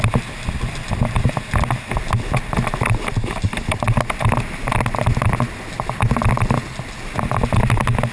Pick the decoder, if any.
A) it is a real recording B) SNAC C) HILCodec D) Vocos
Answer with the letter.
A